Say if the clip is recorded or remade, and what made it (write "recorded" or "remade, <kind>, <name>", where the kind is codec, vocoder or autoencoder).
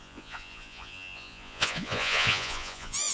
remade, vocoder, Vocos